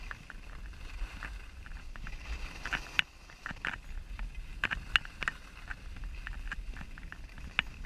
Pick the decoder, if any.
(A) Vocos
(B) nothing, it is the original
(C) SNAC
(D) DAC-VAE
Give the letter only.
B